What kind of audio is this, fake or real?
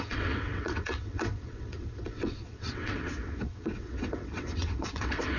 fake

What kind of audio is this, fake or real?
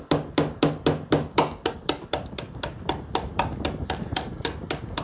real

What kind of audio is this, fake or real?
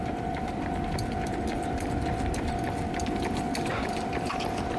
fake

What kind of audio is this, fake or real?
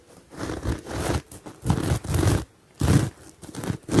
real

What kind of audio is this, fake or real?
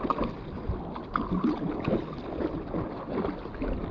real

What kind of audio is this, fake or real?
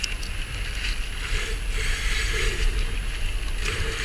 real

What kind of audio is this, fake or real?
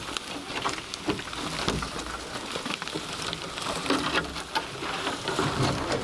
real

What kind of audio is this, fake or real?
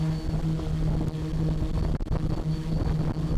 real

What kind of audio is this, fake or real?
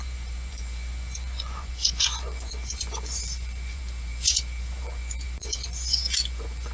fake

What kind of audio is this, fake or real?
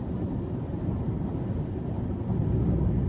real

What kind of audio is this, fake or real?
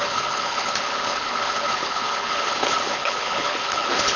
fake